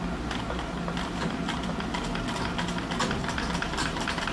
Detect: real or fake real